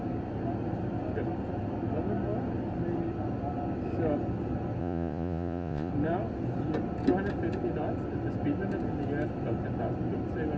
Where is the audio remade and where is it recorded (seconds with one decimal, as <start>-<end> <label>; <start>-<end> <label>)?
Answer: 0.0-4.8 recorded; 4.8-5.9 remade; 5.9-10.6 recorded